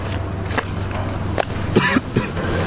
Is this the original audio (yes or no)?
yes